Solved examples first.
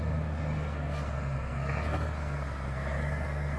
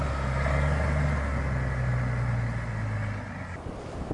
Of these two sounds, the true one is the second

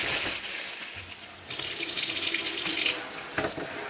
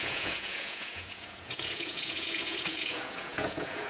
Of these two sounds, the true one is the first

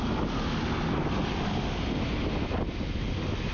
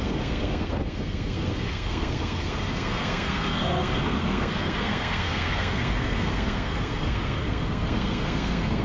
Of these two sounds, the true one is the first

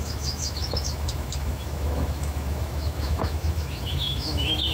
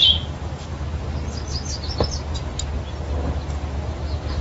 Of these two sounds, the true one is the second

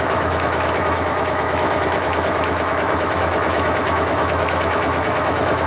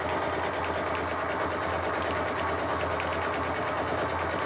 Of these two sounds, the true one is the second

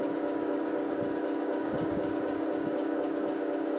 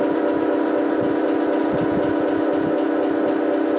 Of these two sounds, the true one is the second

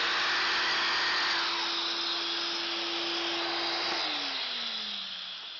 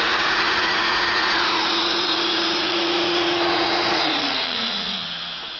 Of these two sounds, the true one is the first